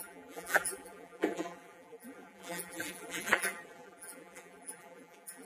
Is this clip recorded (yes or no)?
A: no